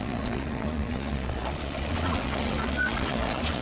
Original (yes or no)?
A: no